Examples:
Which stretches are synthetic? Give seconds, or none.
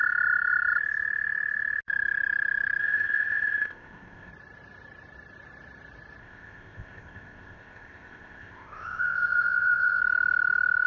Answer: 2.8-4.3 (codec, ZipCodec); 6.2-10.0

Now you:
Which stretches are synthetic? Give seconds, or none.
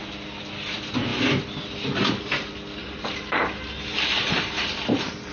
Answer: 2.8-5.3 (vocoder, BigVGAN v2)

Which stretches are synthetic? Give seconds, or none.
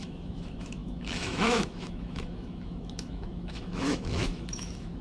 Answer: 0.0-5.0 (autoencoder, DAC-VAE)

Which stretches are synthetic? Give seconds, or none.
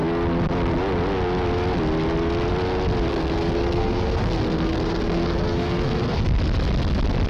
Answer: 3.1-6.4 (codec, SNAC)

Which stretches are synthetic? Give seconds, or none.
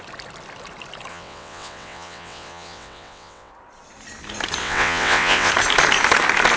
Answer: 1.1-3.5 (vocoder, WaveNeXt); 4.6-5.5